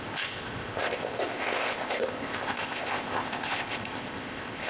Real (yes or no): no